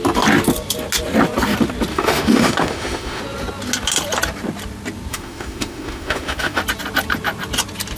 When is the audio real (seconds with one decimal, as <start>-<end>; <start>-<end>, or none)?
0.0-1.9; 3.2-5.1; 6.6-8.0